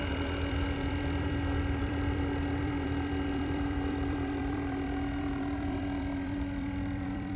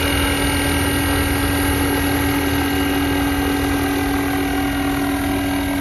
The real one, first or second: second